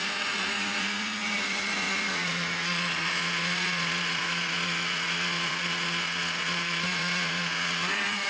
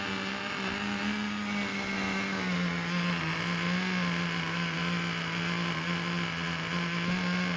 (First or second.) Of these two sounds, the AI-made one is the first